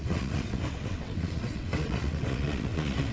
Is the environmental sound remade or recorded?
remade